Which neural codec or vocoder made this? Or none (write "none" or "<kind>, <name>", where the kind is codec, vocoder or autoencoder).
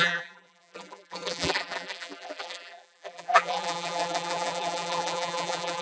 vocoder, BigVGAN v2